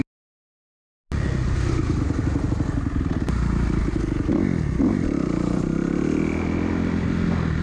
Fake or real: real